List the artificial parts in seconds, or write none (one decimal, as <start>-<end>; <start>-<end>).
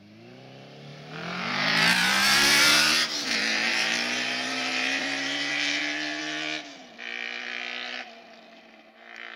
0.9-5.8